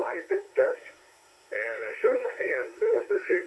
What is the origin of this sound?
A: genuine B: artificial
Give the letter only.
B